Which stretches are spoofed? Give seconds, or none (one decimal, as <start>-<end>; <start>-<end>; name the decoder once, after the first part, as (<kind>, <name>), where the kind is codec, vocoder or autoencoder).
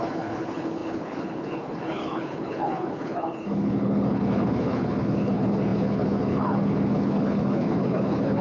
0.0-8.4 (codec, HILCodec)